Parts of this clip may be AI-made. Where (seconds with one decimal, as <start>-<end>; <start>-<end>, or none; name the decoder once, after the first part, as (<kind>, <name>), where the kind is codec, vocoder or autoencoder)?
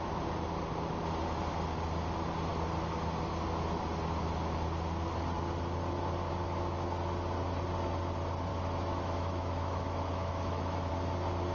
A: 8.5-10.9 (autoencoder, DAC-VAE)